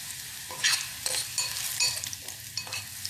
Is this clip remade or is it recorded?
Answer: recorded